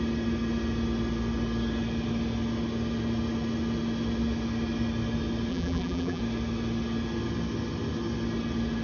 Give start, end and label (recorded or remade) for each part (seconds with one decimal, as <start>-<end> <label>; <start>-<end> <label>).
0.0-5.5 recorded; 5.5-6.2 remade; 6.2-8.8 recorded